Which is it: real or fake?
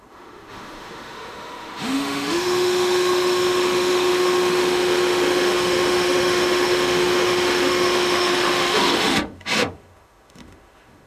fake